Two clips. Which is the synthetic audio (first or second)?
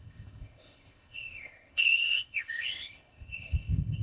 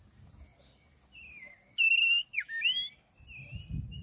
first